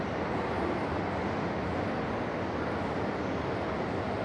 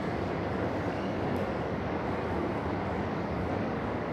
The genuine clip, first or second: first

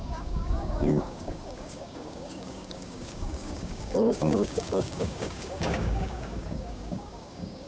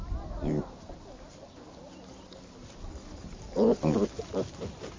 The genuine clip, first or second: second